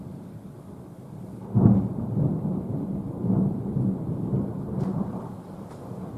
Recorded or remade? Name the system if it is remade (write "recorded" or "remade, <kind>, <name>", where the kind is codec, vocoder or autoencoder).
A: recorded